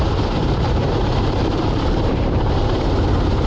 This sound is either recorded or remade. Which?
remade